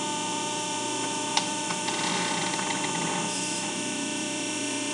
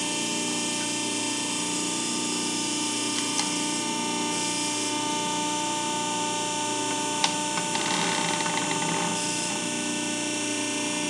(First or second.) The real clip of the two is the second